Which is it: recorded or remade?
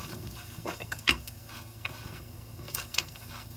remade